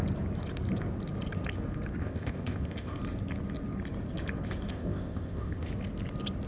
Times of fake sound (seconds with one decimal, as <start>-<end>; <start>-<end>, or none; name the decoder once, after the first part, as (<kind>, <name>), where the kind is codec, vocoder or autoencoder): 2.0-3.0 (codec, ZipCodec); 4.7-5.7